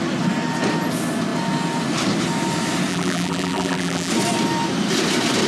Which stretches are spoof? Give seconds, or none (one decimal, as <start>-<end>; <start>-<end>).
2.9-4.1